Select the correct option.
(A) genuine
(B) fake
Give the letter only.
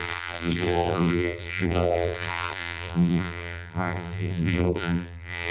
B